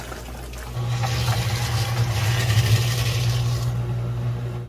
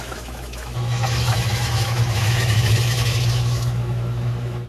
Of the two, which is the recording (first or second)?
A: first